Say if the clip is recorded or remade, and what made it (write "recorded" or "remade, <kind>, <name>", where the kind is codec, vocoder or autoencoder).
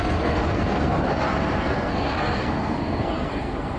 remade, codec, SNAC